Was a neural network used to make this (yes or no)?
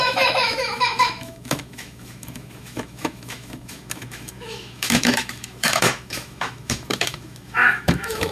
yes